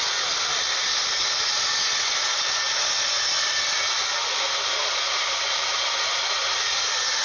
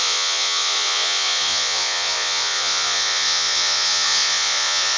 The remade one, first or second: second